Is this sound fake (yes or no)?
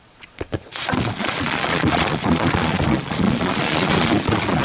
yes